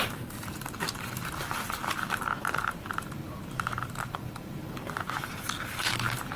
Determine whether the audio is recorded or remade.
remade